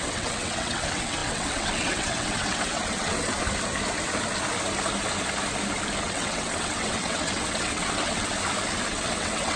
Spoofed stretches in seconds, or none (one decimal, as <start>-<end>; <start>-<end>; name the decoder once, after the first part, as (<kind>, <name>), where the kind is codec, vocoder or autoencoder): 0.0-3.3 (vocoder, WaveNeXt); 6.0-8.3; 8.9-9.6